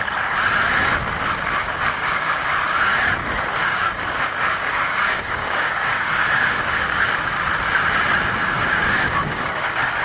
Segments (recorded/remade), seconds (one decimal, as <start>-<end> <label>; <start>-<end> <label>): 0.0-1.6 recorded; 1.6-2.5 remade; 2.5-3.6 recorded; 3.6-7.0 remade; 7.0-8.4 recorded; 8.4-9.5 remade; 9.5-10.0 recorded